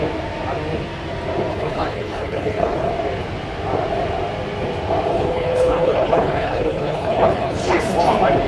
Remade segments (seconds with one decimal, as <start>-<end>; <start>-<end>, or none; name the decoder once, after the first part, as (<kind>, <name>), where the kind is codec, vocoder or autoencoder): 1.5-2.9 (codec, HILCodec); 5.1-7.8